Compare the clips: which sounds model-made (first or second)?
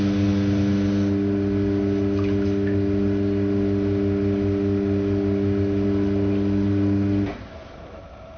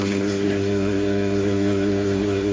second